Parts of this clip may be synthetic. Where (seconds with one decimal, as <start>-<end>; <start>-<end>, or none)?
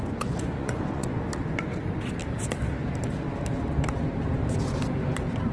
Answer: 0.0-1.2